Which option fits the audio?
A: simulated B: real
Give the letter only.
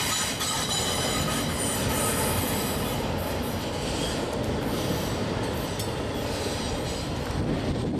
B